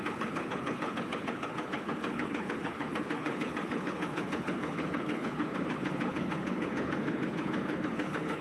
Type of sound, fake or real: fake